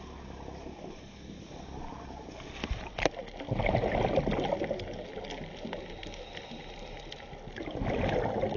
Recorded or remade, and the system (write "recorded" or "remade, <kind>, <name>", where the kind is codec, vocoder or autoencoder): recorded